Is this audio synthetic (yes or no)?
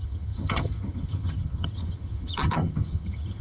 yes